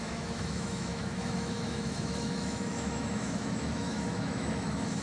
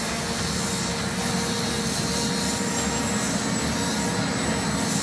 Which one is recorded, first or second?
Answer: second